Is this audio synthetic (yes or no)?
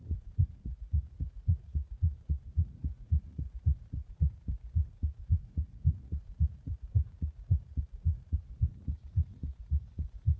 yes